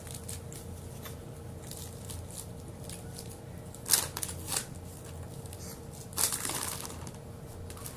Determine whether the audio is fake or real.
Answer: real